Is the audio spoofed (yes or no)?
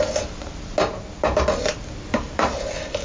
no